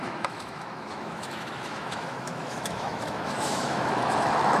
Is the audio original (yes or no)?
no